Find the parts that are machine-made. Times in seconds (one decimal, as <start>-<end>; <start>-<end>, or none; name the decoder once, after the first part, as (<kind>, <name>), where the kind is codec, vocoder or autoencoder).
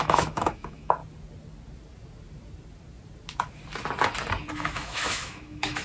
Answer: 0.0-1.0 (autoencoder, DAC-VAE); 4.5-5.8